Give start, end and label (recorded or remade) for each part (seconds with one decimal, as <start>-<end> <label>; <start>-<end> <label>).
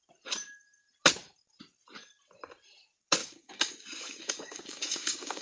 0.0-3.2 recorded; 3.2-5.4 remade